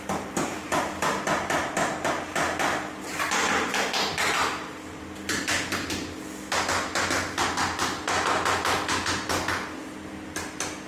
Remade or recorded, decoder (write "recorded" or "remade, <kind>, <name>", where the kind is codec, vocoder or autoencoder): recorded